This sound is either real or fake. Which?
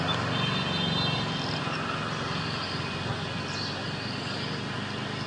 real